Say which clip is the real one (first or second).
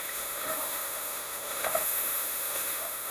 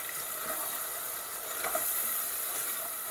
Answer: second